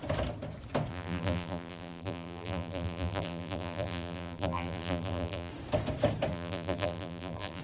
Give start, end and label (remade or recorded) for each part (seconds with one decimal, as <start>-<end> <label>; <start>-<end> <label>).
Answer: 0.0-0.9 recorded; 0.9-5.5 remade; 5.5-6.3 recorded; 6.3-7.6 remade